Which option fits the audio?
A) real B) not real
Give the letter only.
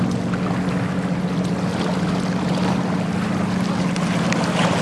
A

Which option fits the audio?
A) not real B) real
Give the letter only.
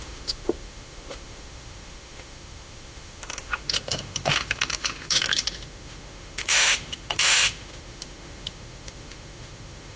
A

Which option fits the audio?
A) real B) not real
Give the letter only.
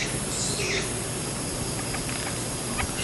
A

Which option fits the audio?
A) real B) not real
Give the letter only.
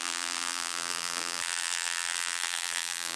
B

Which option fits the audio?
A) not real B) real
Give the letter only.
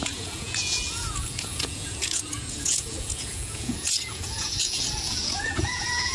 A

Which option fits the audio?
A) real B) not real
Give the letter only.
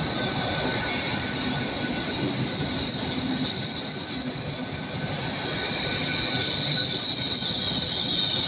A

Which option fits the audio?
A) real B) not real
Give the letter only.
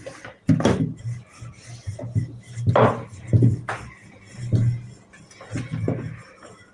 A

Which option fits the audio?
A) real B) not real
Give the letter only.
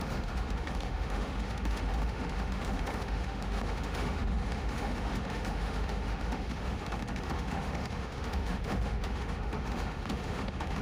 B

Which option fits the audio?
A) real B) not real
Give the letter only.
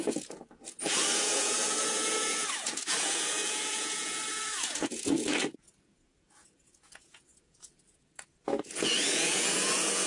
B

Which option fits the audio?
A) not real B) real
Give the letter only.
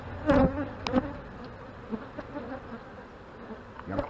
B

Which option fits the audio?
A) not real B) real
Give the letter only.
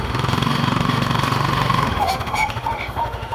A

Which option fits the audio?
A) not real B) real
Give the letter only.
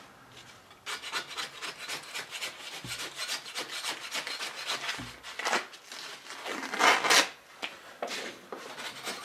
B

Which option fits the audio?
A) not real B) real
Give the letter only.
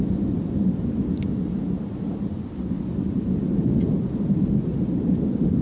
B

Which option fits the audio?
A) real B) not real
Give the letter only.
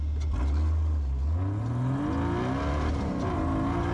A